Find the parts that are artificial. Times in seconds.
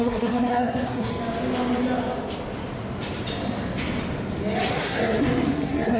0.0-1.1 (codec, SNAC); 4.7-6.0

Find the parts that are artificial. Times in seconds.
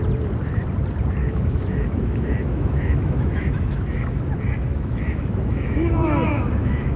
1.2-4.2 (autoencoder, DAC-VAE); 4.7-7.0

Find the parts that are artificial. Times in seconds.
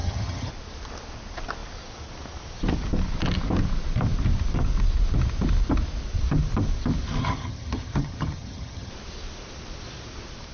0.0-0.5 (vocoder, HiFi-GAN); 7.2-8.9